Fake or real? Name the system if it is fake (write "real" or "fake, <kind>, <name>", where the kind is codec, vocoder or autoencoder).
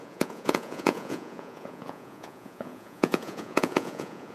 fake, vocoder, Vocos